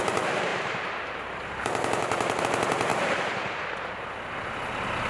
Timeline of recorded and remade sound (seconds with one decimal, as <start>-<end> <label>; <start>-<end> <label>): 0.0-0.5 recorded; 0.5-2.4 remade; 2.4-2.9 recorded; 2.9-3.7 remade; 3.7-5.1 recorded